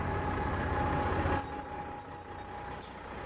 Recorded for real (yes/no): yes